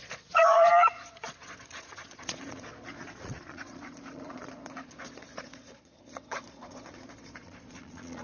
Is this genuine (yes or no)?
no